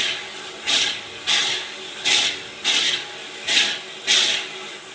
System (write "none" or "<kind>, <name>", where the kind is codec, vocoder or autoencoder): none